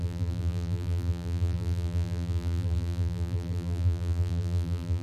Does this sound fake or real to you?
fake